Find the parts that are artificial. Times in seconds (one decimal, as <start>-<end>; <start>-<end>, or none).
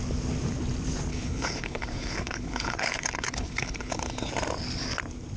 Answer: 1.1-4.3